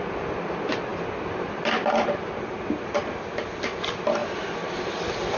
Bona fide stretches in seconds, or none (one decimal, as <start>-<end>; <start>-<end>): 0.0-5.4